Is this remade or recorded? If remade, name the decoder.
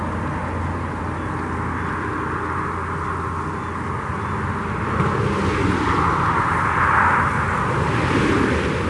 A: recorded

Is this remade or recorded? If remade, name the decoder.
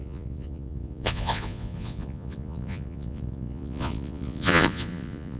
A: remade, vocoder, Vocos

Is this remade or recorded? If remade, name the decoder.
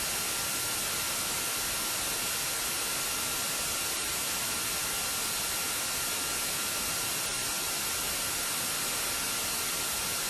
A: recorded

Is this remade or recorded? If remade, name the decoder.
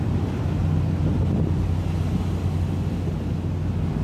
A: recorded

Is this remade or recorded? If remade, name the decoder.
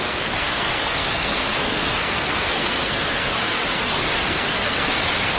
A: remade, codec, SNAC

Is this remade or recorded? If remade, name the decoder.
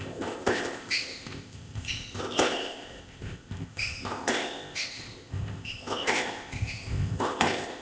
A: remade, codec, ZipCodec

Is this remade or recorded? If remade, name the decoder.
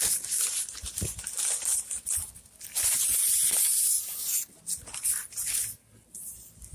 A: recorded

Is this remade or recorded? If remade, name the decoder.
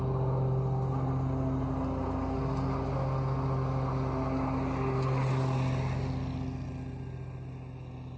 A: recorded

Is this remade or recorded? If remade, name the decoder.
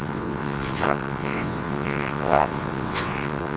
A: remade, vocoder, WaveNeXt